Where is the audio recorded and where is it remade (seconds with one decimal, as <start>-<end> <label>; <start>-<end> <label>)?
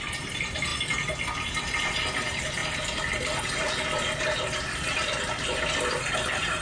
0.0-0.7 remade; 0.7-1.6 recorded; 1.6-6.6 remade